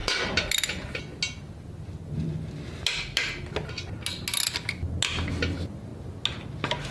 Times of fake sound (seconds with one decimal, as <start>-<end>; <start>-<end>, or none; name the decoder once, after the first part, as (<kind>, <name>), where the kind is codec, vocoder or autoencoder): none